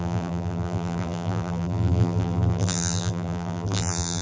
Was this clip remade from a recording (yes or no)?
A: yes